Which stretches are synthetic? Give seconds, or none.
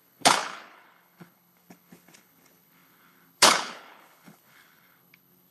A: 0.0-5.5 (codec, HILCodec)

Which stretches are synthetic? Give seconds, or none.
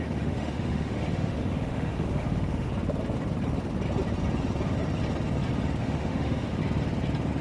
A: 0.0-2.7 (autoencoder, DAC-VAE); 5.8-6.6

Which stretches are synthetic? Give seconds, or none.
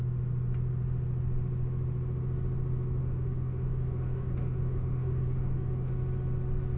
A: 3.0-5.9 (autoencoder, DAC-VAE)